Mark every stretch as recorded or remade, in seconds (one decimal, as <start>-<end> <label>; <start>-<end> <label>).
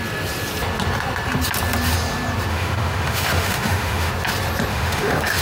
0.0-2.5 recorded; 2.5-4.1 remade; 4.1-4.7 recorded; 4.7-5.4 remade